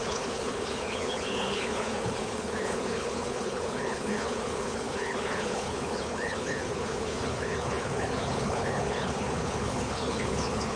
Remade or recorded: remade